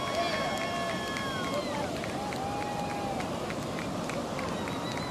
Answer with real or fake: real